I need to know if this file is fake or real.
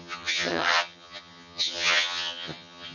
fake